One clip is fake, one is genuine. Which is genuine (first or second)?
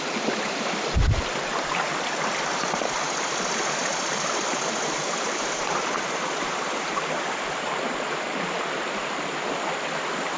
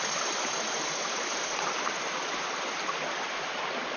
second